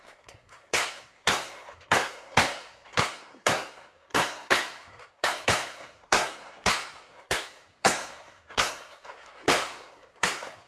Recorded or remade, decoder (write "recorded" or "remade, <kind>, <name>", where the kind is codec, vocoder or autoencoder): remade, codec, SNAC